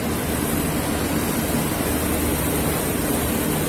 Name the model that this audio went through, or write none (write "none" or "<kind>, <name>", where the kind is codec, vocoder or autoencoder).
none